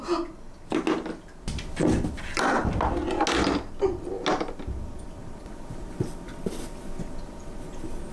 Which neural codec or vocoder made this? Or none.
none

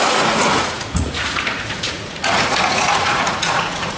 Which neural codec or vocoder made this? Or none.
vocoder, Vocos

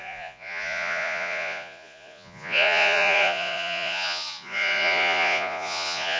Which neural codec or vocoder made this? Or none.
vocoder, Vocos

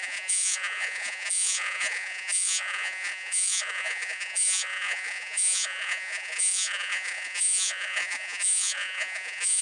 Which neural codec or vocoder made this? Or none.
vocoder, Vocos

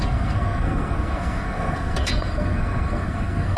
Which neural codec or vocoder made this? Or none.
codec, SNAC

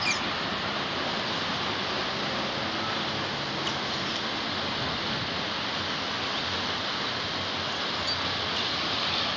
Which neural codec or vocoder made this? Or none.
none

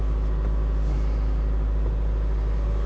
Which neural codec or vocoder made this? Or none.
none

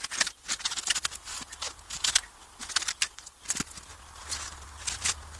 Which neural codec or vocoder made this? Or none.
none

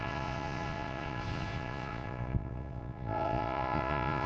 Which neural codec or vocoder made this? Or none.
vocoder, Vocos